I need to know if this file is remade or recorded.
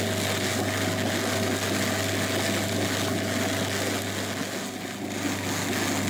recorded